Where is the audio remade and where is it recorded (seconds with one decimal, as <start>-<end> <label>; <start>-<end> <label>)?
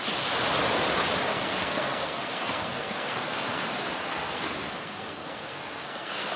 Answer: 0.0-1.3 recorded; 1.3-3.6 remade; 3.6-4.1 recorded; 4.1-6.4 remade